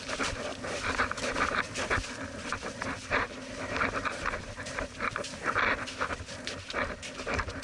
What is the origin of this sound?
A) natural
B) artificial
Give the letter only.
B